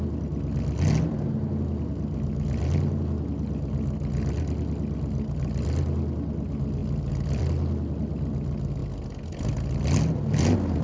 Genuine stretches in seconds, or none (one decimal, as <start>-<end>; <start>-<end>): 0.0-10.8